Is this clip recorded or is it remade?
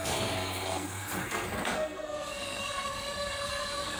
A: remade